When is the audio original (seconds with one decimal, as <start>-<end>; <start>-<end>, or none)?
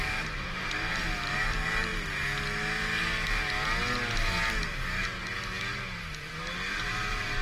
1.9-6.2